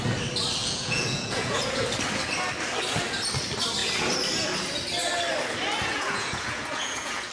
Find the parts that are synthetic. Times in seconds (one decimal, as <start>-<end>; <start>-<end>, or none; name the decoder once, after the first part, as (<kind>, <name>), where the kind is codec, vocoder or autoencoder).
0.6-1.8 (vocoder, Vocos); 5.9-7.3